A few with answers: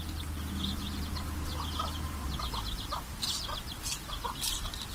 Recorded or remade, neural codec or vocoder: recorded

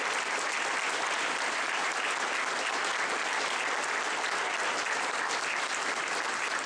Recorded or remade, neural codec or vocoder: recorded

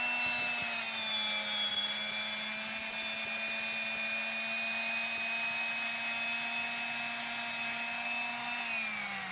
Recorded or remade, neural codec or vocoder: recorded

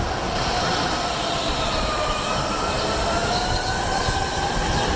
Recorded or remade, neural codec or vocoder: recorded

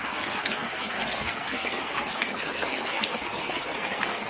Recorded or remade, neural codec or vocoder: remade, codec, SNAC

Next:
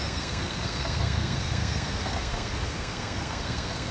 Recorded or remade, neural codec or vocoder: remade, codec, SNAC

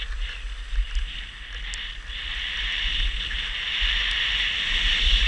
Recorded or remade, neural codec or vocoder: recorded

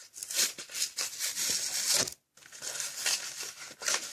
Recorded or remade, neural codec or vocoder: recorded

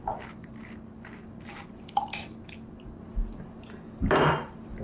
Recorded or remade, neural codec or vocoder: recorded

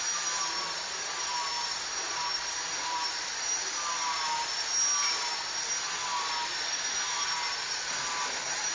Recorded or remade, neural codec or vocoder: recorded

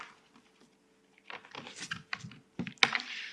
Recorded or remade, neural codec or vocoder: recorded